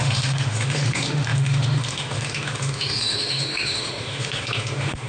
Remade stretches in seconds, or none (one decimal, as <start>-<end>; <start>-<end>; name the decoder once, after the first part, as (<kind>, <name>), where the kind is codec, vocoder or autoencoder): 0.0-5.1 (autoencoder, DAC-VAE)